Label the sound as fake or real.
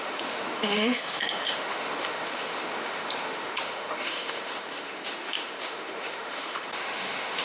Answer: fake